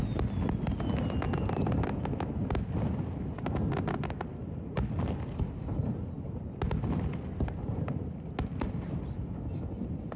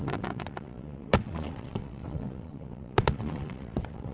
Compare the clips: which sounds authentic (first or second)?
first